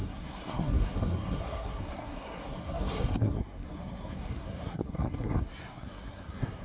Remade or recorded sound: remade